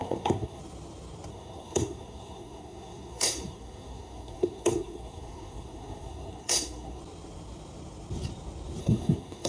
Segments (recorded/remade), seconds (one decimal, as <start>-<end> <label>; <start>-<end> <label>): 0.0-0.6 remade; 0.6-1.3 recorded; 1.3-7.0 remade; 7.0-8.8 recorded; 8.8-9.5 remade